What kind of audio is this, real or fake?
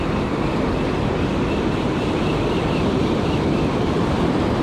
real